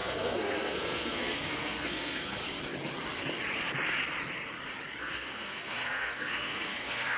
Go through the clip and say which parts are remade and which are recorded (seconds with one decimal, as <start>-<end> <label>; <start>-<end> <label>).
0.0-2.4 remade; 2.4-5.0 recorded; 5.0-7.2 remade